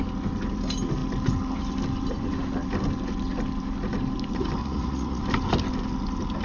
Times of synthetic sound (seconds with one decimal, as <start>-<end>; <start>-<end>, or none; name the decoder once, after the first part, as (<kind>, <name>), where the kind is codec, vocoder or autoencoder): 4.6-5.2 (vocoder, Vocos)